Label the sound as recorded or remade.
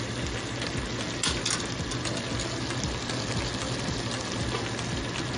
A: recorded